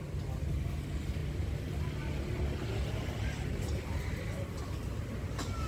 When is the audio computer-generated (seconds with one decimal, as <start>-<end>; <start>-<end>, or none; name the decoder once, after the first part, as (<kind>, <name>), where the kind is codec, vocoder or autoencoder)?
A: none